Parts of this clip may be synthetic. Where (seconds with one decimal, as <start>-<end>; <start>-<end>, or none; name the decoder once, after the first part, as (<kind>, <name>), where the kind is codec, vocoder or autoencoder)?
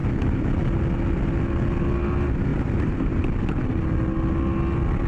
2.5-3.2 (vocoder, BigVGAN v2)